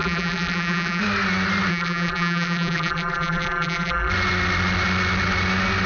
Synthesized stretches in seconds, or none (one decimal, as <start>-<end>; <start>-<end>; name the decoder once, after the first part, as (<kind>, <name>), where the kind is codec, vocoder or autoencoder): 0.0-1.0 (vocoder, BigVGAN v2); 1.7-4.1